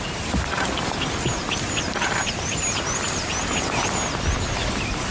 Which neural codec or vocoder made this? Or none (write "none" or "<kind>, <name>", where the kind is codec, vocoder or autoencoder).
none